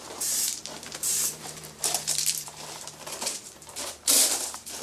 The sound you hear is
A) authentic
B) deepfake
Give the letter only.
B